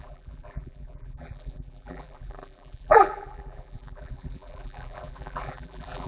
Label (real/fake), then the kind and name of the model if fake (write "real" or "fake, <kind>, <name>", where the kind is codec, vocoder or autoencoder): fake, vocoder, BigVGAN v2